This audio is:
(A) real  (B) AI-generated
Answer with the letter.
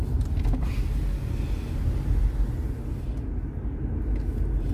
A